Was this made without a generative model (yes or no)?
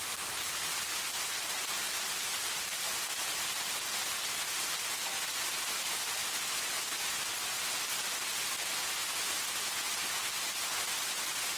yes